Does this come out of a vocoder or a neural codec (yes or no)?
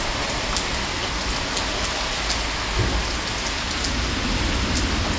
no